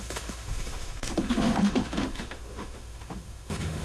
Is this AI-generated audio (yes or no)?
yes